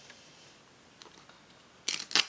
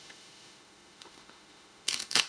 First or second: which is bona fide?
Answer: first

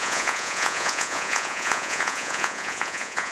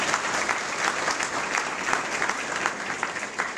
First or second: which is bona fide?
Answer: second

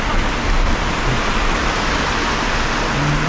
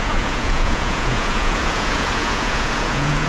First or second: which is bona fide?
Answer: first